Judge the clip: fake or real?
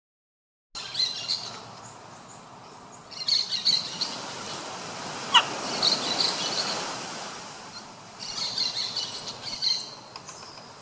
real